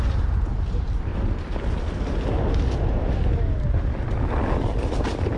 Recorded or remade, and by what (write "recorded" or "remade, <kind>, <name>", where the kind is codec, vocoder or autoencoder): recorded